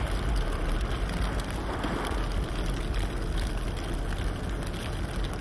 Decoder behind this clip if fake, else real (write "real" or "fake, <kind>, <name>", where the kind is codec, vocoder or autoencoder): real